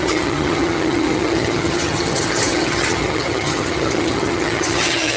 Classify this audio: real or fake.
fake